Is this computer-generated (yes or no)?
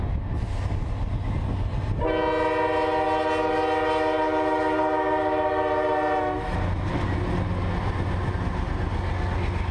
no